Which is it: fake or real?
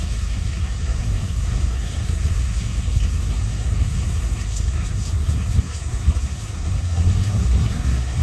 fake